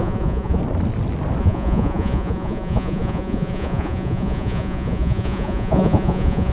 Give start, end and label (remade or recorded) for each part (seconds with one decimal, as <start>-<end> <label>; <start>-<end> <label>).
0.0-0.6 remade; 0.6-1.4 recorded; 1.4-6.5 remade